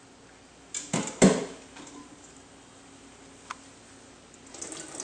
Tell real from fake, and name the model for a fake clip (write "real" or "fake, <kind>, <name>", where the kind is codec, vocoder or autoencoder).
real